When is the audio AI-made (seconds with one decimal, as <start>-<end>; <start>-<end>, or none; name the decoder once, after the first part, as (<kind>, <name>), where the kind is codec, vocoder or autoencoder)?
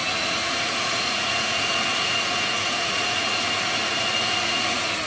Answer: 0.0-5.1 (vocoder, Vocos)